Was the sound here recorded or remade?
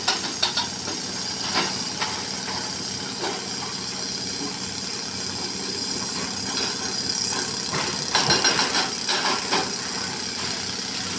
recorded